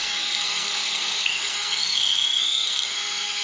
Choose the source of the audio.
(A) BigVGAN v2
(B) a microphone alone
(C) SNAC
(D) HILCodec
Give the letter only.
C